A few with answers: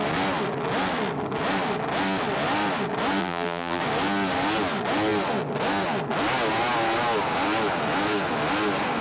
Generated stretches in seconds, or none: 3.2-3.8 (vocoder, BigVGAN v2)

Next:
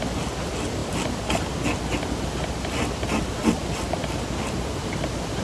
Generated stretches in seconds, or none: none

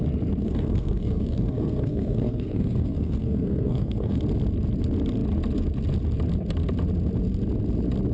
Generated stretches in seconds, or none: 0.4-4.2 (codec, SNAC)